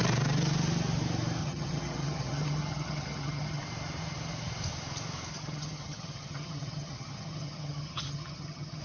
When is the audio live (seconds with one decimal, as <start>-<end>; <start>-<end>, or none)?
0.0-1.4; 3.6-5.3